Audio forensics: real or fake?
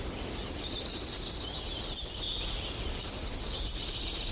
real